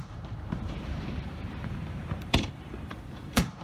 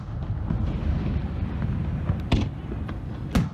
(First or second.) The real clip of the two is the second